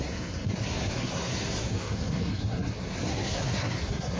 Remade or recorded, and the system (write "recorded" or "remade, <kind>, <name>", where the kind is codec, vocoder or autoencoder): remade, codec, SNAC